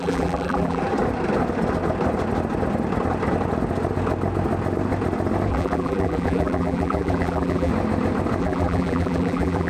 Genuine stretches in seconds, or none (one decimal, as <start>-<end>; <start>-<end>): 0.8-5.5; 7.7-8.4